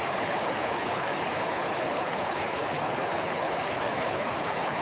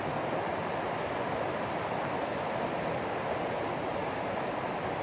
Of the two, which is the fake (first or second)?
first